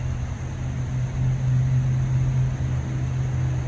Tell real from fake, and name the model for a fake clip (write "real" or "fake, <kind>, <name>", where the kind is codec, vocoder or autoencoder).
real